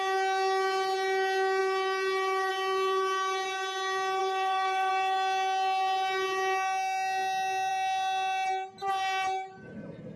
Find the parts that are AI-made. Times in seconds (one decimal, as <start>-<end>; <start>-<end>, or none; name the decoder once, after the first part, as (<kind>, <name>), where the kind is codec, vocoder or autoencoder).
4.2-4.9 (codec, SNAC)